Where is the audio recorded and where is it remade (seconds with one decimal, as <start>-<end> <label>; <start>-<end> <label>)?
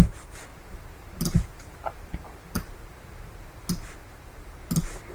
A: 0.0-0.5 recorded; 0.5-3.6 remade; 3.6-4.0 recorded; 4.0-4.6 remade; 4.6-5.1 recorded